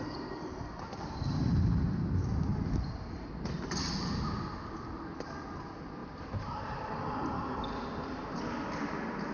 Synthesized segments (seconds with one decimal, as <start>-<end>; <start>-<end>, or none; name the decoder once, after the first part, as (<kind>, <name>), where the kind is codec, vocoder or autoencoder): 6.0-6.9 (vocoder, BigVGAN v2)